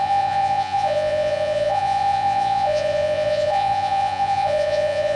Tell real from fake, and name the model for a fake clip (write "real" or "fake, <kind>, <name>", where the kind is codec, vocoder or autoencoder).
fake, vocoder, Vocos